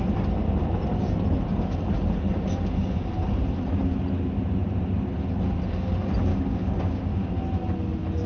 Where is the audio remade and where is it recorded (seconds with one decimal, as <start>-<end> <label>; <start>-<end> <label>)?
0.0-6.3 recorded; 6.3-7.3 remade; 7.3-8.3 recorded

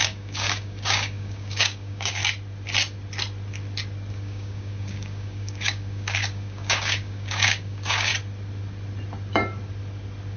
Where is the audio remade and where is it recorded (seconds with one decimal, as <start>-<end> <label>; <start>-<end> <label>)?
0.0-2.2 remade; 2.2-4.1 recorded; 4.1-8.1 remade; 8.1-10.4 recorded

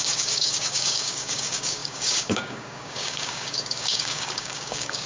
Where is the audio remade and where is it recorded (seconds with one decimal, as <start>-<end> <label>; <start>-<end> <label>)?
0.0-5.1 remade